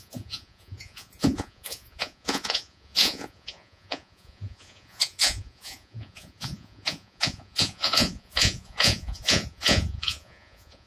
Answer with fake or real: fake